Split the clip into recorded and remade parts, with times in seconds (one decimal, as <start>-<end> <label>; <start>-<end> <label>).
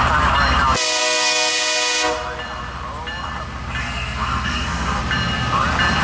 0.0-1.0 recorded; 1.0-1.5 remade; 1.5-3.8 recorded; 3.8-5.0 remade; 5.0-6.0 recorded